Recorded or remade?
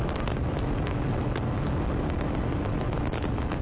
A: recorded